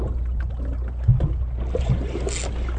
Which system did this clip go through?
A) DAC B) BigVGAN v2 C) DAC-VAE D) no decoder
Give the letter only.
D